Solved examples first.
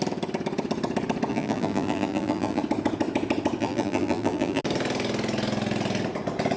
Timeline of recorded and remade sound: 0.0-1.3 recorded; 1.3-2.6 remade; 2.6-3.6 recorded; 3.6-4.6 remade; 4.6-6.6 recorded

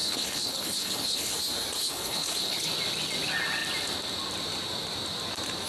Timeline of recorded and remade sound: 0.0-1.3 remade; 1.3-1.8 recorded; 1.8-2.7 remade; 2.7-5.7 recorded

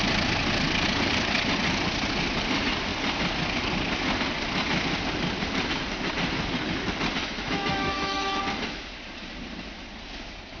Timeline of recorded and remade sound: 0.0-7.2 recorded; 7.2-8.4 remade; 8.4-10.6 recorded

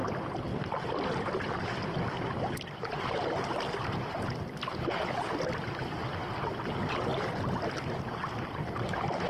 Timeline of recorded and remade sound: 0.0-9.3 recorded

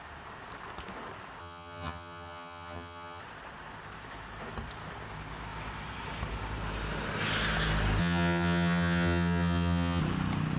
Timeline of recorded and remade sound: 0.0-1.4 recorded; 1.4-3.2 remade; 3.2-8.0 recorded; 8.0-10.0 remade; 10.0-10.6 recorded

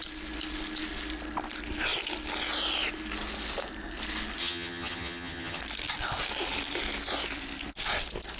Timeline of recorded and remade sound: 0.0-4.4 recorded; 4.4-5.6 remade; 5.6-8.4 recorded

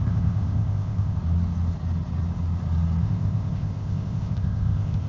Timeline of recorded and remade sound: 0.0-1.2 remade; 1.2-3.0 recorded; 3.0-5.1 remade

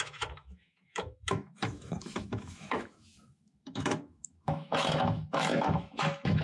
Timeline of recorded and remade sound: 0.0-6.4 remade